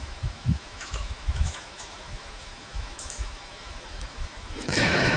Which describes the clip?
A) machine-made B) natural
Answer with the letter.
A